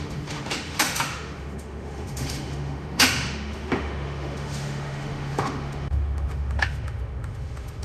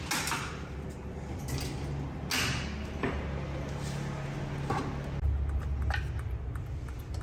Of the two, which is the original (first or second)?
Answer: second